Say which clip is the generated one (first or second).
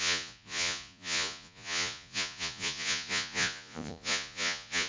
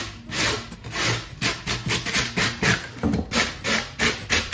first